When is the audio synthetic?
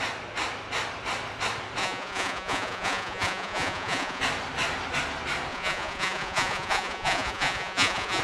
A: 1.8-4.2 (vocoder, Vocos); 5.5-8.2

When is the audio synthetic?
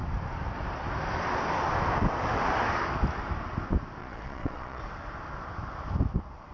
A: 4.0-4.8 (vocoder, Vocos)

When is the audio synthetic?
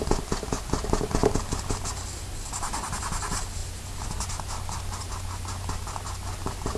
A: none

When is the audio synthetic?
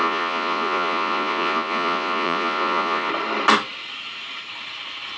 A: 0.0-3.1 (vocoder, Vocos)